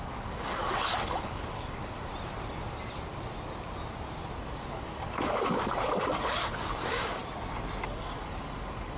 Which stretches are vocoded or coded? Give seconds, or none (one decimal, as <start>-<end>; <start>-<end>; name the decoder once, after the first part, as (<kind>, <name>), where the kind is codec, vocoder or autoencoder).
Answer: 0.0-2.1 (codec, DAC); 4.4-7.2; 7.8-9.0